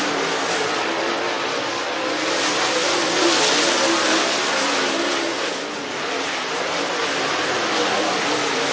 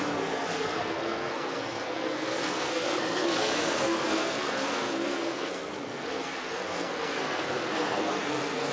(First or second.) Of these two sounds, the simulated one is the second